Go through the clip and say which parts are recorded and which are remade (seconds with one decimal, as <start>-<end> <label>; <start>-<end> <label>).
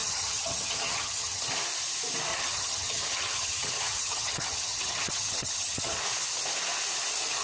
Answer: 0.0-1.5 remade; 1.5-2.3 recorded; 2.3-6.0 remade; 6.0-7.4 recorded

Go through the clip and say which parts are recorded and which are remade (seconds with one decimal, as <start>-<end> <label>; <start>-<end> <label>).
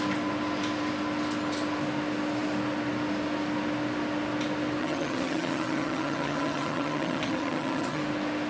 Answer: 0.0-4.8 recorded; 4.8-8.0 remade; 8.0-8.5 recorded